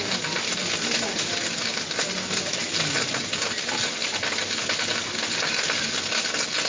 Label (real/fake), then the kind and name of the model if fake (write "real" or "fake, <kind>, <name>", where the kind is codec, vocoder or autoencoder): real